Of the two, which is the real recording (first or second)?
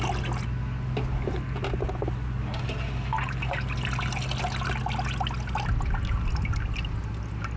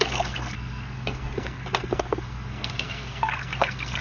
first